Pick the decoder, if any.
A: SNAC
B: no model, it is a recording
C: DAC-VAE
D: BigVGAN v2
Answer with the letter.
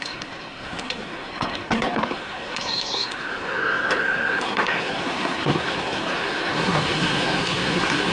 A